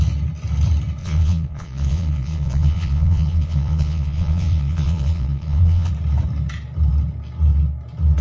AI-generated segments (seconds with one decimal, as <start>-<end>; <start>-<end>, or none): 1.0-5.9